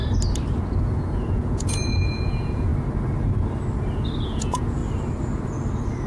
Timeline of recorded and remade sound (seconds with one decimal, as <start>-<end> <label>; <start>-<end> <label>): 0.0-0.8 recorded; 0.8-2.7 remade; 2.7-4.2 recorded; 4.2-4.8 remade; 4.8-6.1 recorded